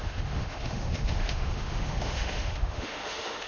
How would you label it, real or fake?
fake